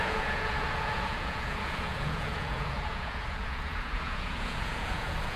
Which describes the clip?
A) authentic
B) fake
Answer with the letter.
B